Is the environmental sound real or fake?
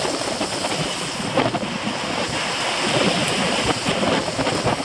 real